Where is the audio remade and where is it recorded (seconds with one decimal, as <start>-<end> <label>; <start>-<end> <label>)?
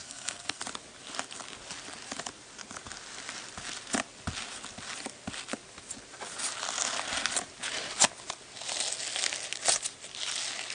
0.0-0.6 remade; 0.6-10.7 recorded